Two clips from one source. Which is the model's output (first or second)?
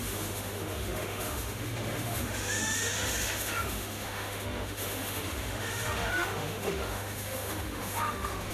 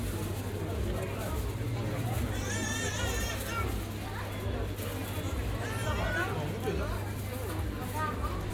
first